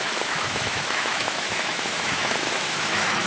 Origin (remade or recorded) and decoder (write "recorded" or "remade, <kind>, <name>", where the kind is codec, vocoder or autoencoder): remade, autoencoder, DAC-VAE